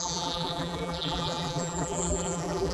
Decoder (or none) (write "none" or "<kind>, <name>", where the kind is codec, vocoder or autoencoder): vocoder, BigVGAN v2